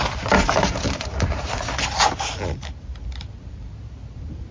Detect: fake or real real